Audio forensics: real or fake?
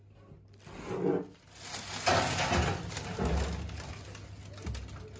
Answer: real